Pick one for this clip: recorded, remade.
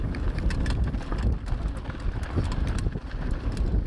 recorded